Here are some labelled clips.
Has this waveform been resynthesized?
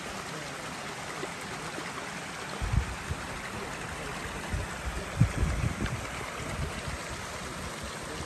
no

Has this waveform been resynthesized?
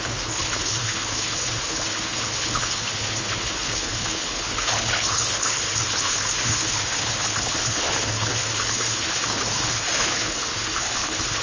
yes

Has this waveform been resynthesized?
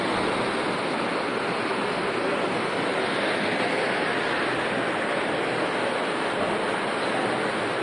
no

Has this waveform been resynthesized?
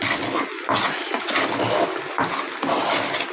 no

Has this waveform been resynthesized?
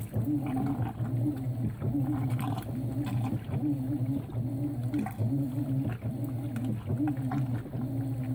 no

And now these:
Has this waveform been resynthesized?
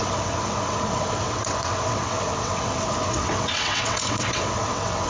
yes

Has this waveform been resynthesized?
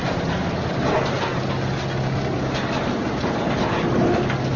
no